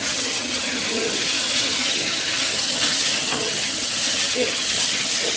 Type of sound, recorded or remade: remade